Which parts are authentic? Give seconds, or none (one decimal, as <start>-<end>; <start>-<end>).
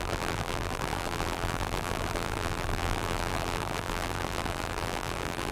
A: none